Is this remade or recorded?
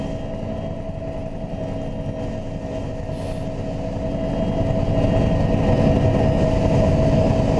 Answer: recorded